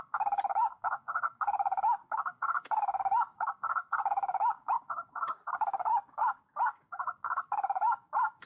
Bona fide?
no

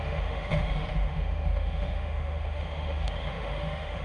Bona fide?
no